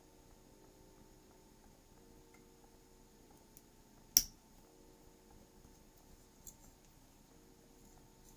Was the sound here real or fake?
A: real